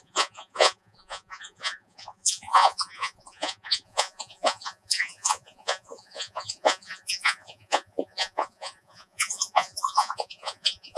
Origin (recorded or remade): remade